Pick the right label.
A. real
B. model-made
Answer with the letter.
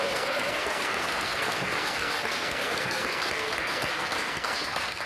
B